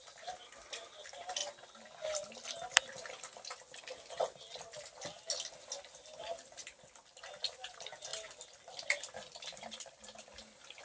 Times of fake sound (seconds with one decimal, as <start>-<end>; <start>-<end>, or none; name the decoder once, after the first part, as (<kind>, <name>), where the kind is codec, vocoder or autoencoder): none